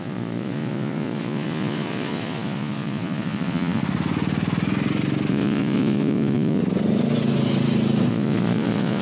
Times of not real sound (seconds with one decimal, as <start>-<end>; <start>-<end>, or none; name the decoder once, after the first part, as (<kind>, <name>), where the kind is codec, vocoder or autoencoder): 0.0-3.8 (vocoder, Vocos); 5.3-6.6; 8.1-9.0